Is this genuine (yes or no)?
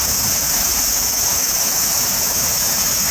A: no